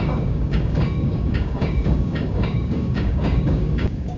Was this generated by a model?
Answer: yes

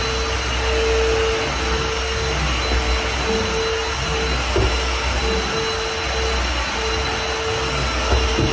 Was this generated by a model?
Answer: no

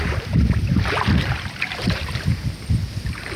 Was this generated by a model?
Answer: yes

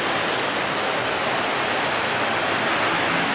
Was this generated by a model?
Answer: no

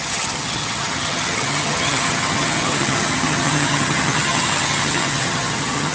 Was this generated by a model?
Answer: yes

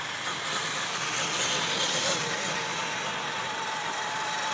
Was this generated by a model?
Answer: no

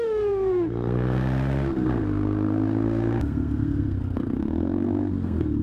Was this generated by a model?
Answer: yes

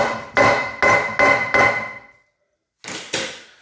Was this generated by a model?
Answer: no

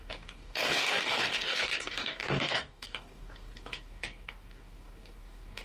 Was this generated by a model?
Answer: yes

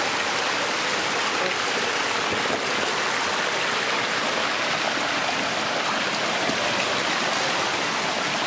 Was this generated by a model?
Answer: no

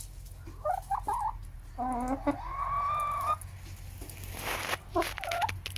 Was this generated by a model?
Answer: no